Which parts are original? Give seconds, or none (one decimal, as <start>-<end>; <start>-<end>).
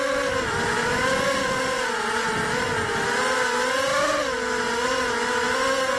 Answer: 0.0-6.0